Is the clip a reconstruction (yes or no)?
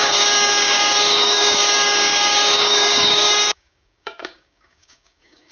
yes